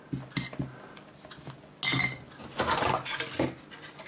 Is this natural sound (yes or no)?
yes